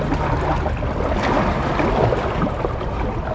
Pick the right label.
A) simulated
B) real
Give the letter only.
B